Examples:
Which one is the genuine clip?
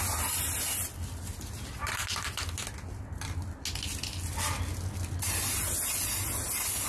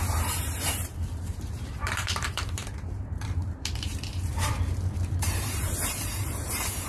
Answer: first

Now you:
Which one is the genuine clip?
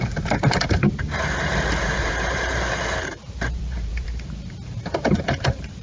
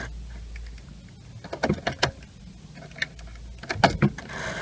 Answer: second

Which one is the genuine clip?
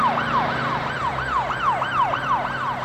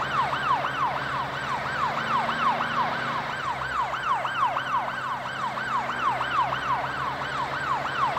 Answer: second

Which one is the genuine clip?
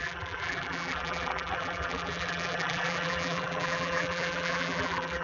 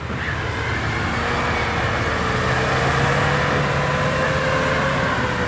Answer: second